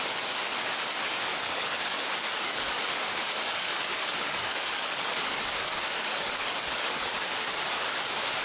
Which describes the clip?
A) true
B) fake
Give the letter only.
B